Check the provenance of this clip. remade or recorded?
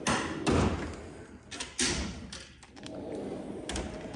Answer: recorded